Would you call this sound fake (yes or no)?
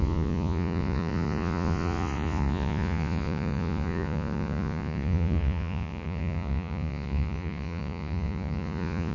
yes